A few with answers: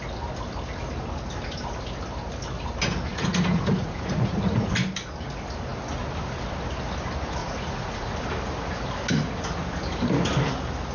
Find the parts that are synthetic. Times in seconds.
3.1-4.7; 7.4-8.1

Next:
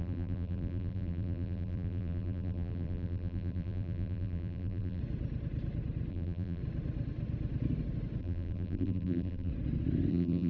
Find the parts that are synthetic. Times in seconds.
0.0-5.0; 6.1-6.6; 8.2-9.5; 10.1-10.5

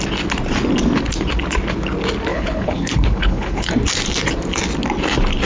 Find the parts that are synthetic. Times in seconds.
2.3-3.7

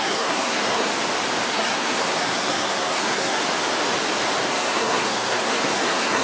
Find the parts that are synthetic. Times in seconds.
0.0-0.9; 1.5-3.4; 4.5-6.2

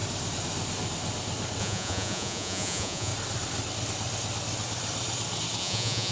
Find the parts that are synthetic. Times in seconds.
1.6-3.1; 5.6-6.1